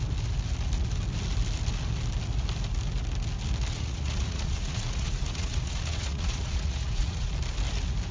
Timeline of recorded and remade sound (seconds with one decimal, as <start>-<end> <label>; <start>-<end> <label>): 0.0-3.7 recorded; 3.7-7.3 remade; 7.3-8.1 recorded